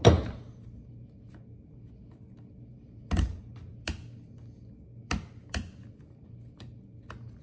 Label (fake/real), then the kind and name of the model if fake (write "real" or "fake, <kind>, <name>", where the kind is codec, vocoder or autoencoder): real